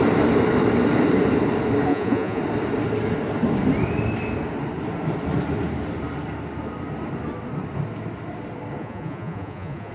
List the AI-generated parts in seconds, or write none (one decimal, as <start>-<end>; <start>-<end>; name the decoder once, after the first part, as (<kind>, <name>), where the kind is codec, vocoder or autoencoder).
1.9-2.4 (vocoder, Vocos); 8.8-9.9